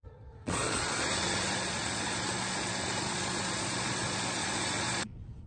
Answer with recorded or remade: remade